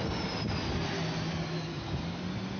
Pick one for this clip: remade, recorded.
recorded